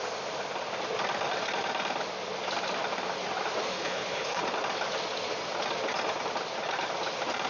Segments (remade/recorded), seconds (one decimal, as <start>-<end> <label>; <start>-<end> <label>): 0.0-3.7 recorded; 3.7-4.4 remade; 4.4-7.5 recorded